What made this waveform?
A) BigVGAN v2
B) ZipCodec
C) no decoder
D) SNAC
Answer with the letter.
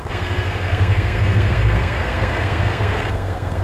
D